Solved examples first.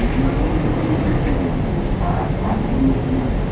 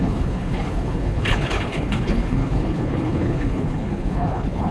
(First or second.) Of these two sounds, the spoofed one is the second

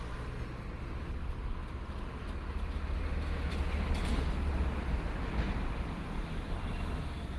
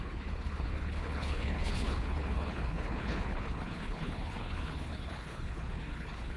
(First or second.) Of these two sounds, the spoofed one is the second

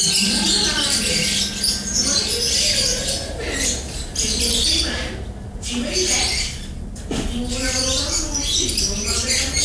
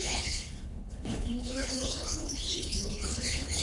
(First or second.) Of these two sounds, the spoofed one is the second